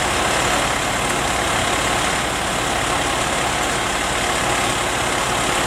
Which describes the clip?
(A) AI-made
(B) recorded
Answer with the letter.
B